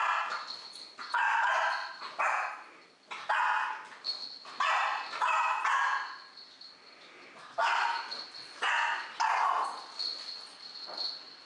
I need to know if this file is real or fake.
real